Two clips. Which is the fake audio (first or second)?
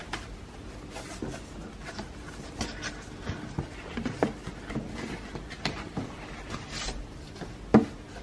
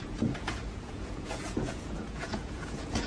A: second